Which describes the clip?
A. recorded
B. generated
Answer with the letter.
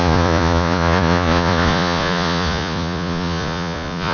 B